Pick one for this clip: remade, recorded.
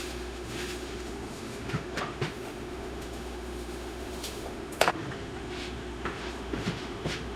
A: remade